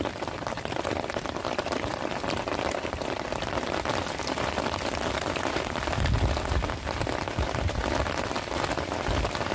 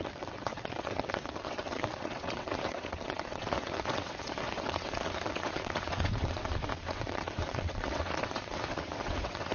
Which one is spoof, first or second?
second